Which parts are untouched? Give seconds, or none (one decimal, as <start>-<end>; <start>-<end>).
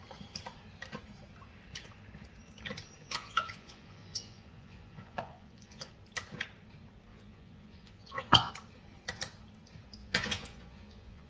0.0-3.0; 5.9-7.1; 8.5-10.0